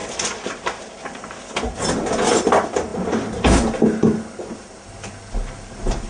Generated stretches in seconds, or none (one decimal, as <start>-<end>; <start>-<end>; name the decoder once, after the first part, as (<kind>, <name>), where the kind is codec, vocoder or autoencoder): 0.0-1.7 (vocoder, BigVGAN v2)